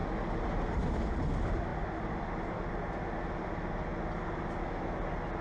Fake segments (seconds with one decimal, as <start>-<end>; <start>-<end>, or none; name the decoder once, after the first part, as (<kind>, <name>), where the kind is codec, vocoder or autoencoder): none